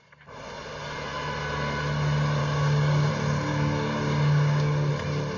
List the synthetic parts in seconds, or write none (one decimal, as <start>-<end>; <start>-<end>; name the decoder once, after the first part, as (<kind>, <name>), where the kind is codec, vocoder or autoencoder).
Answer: 2.4-3.1 (codec, DAC); 3.5-4.9